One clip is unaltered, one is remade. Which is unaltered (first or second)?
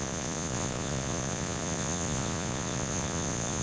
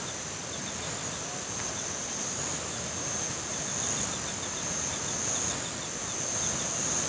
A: second